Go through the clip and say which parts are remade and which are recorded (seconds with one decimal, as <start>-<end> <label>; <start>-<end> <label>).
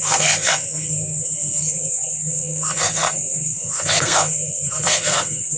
0.0-5.6 remade